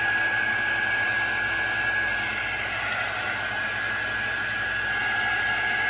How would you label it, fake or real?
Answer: real